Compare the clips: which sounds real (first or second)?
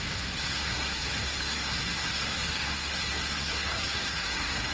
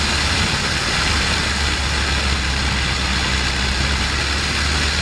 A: second